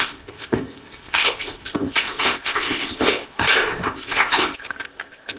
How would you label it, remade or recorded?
remade